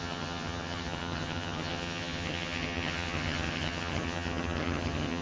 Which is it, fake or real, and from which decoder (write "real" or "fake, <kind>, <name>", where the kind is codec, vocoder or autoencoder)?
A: fake, vocoder, HiFi-GAN